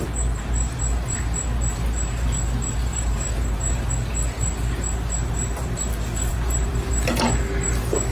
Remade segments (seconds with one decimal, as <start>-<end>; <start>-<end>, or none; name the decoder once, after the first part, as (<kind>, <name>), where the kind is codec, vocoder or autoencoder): 2.9-3.9 (vocoder, BigVGAN v2); 6.3-6.9